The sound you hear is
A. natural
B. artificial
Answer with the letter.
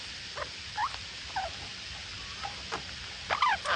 A